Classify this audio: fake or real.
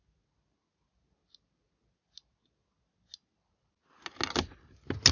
real